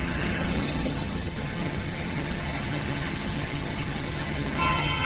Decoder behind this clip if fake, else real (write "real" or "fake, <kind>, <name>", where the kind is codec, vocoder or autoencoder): fake, vocoder, HiFi-GAN